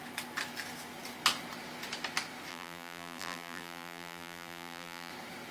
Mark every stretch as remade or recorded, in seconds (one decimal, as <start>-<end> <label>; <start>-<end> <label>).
0.0-2.5 recorded; 2.5-5.1 remade; 5.1-5.5 recorded